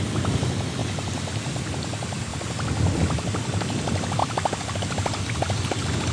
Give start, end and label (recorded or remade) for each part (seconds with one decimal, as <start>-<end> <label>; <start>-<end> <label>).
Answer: 0.0-2.3 recorded; 2.3-3.0 remade; 3.0-4.2 recorded; 4.2-5.2 remade; 5.2-6.1 recorded